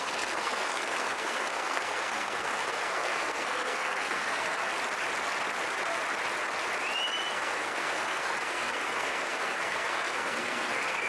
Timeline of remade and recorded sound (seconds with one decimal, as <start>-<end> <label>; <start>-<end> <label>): 0.0-4.6 remade; 4.6-7.3 recorded; 7.3-11.1 remade